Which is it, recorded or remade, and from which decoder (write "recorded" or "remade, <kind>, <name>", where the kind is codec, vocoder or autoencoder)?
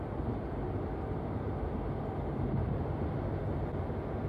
recorded